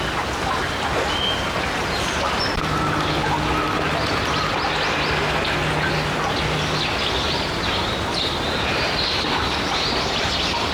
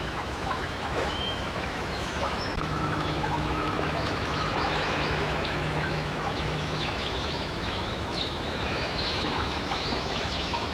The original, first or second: first